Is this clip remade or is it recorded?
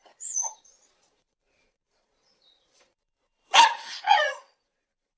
remade